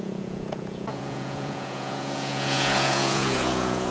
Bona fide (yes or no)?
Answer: no